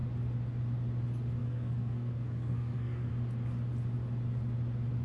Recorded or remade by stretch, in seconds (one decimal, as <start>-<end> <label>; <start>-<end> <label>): 0.0-1.4 recorded; 1.4-3.1 remade; 3.1-5.0 recorded